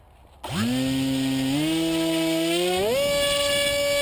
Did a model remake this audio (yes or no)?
no